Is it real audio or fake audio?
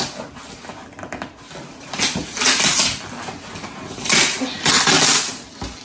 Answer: real